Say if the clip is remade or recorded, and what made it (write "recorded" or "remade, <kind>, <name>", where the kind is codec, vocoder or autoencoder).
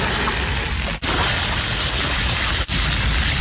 recorded